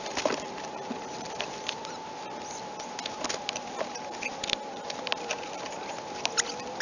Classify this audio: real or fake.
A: real